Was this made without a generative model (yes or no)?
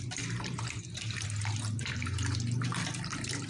yes